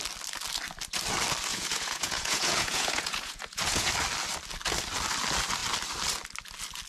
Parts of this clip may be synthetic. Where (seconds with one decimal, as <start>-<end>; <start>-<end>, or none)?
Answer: 1.5-3.9